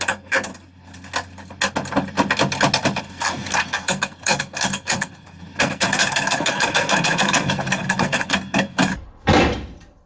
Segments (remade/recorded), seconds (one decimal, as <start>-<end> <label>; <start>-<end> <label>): 0.0-0.5 remade; 0.5-3.0 recorded; 3.0-8.9 remade; 8.9-10.1 recorded